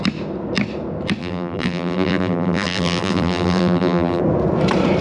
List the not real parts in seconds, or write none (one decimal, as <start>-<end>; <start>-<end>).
1.2-4.2